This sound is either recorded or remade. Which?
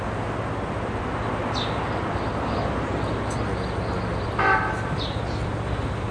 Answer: recorded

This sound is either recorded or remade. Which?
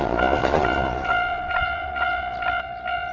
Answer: remade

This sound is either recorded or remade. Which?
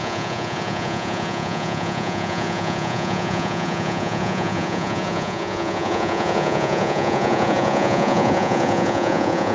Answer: remade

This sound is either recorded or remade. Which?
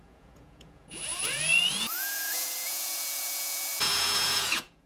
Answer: remade